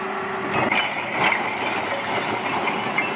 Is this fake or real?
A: real